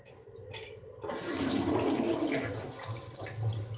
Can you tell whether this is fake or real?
real